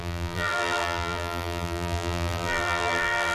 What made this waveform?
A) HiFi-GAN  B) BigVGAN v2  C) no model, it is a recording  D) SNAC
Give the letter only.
B